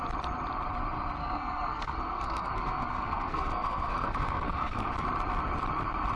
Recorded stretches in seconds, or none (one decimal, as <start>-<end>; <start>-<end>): 0.0-1.2; 4.9-6.2